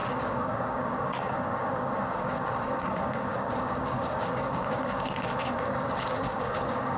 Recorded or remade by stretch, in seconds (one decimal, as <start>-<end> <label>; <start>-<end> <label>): 0.0-7.0 remade